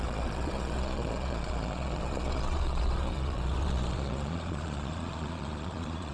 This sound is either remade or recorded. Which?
remade